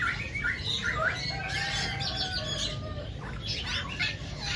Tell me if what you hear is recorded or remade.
recorded